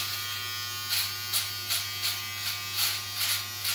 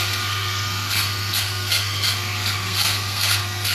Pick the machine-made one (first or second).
second